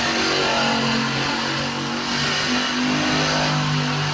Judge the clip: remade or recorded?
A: recorded